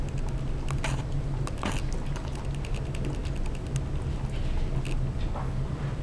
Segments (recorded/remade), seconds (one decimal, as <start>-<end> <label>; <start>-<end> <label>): 0.0-6.0 recorded